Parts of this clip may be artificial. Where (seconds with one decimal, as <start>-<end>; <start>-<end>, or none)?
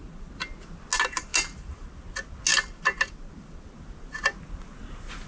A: none